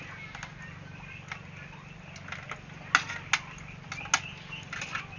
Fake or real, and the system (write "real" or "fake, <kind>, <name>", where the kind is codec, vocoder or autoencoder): real